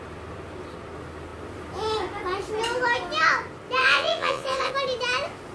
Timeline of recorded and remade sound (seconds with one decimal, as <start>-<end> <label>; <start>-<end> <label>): 0.0-3.8 recorded; 3.8-4.7 remade; 4.7-5.5 recorded